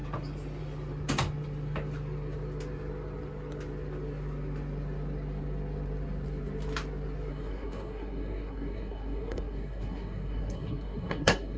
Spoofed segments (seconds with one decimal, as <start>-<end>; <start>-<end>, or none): 7.3-11.6